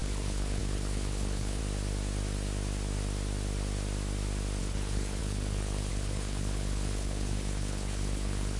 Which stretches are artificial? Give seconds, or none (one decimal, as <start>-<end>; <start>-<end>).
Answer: 0.0-1.6; 4.6-8.6